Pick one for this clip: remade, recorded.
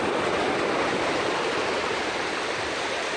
recorded